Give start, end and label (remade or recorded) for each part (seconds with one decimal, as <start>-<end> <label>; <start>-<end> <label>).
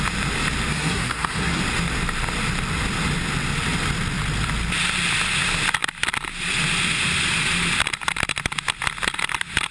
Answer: 0.0-0.7 recorded; 0.7-1.6 remade; 1.6-9.7 recorded